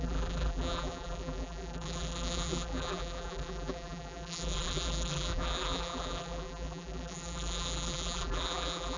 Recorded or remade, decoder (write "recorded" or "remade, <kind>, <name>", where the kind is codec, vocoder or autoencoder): remade, vocoder, BigVGAN v2